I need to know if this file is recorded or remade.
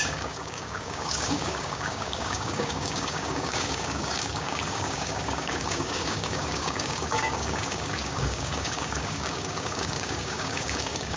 remade